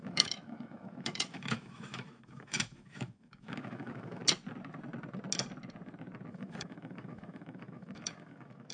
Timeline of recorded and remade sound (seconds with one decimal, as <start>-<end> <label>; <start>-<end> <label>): 0.0-4.2 remade; 4.2-6.3 recorded; 6.3-8.7 remade